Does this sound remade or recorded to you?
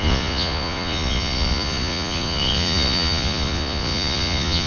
remade